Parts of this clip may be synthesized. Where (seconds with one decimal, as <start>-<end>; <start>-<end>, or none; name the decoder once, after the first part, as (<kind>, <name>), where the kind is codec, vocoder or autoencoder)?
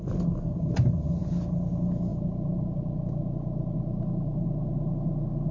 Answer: none